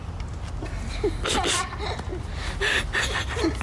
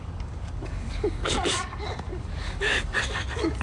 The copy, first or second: second